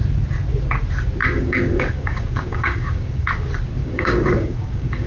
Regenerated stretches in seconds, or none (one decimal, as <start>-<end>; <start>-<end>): 1.2-3.3; 3.8-5.1